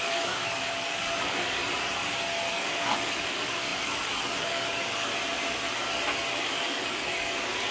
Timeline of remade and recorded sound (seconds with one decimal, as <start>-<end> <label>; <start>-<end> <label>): 0.0-1.6 remade; 1.6-2.5 recorded; 2.5-5.1 remade; 5.1-6.4 recorded; 6.4-7.7 remade